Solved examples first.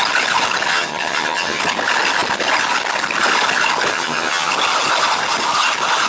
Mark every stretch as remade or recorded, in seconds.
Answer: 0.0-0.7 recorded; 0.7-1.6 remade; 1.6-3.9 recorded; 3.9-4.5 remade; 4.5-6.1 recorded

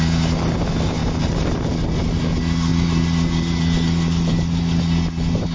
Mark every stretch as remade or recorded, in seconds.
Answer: 0.0-5.5 recorded

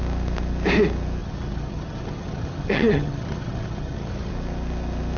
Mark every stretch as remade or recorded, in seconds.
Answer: 0.0-1.2 recorded; 1.2-4.3 remade; 4.3-5.2 recorded

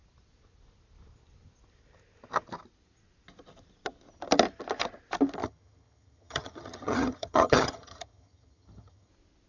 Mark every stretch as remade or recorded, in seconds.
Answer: 0.0-5.4 recorded; 5.4-9.1 remade; 9.1-9.5 recorded

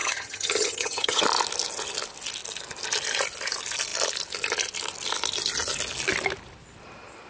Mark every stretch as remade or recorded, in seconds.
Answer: 0.0-1.2 remade; 1.2-7.3 recorded

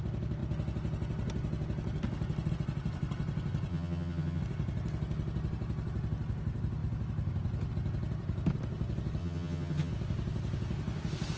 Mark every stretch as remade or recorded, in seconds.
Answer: 0.0-3.7 recorded; 3.7-4.4 remade; 4.4-9.2 recorded; 9.2-9.9 remade; 9.9-11.4 recorded

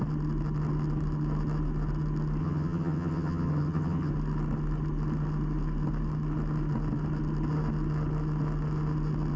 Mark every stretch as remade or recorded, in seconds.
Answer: 0.0-2.4 recorded; 2.4-4.1 remade; 4.1-9.4 recorded

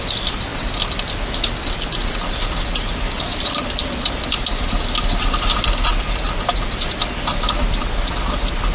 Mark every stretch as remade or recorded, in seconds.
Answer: 0.0-8.7 recorded